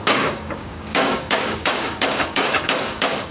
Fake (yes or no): yes